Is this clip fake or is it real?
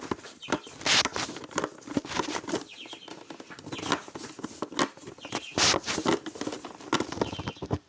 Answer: real